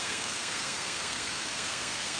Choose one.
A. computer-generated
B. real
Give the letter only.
A